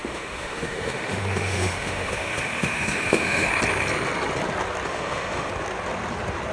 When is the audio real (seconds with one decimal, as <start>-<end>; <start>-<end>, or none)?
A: 3.5-4.9; 5.5-6.5